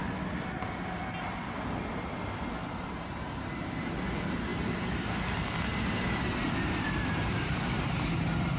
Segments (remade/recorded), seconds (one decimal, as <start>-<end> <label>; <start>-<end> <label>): 0.0-2.6 recorded; 2.6-3.9 remade; 3.9-6.4 recorded; 6.4-8.1 remade; 8.1-8.6 recorded